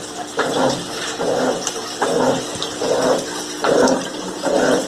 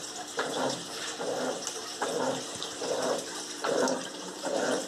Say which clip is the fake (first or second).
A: second